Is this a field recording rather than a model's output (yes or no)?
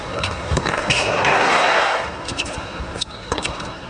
no